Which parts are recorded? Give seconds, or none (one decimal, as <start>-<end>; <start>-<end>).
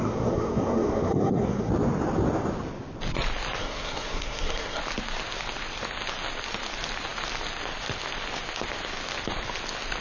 1.7-3.6; 4.8-10.0